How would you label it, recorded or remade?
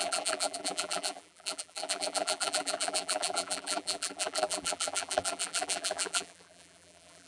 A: remade